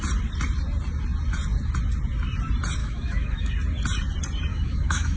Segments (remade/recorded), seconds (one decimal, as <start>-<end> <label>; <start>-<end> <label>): 0.0-2.8 recorded; 2.8-3.5 remade; 3.5-4.5 recorded; 4.5-5.2 remade